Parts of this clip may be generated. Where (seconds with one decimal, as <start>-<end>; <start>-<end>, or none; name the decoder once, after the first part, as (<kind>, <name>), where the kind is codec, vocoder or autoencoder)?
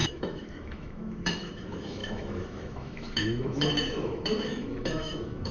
0.0-5.5 (autoencoder, DAC-VAE)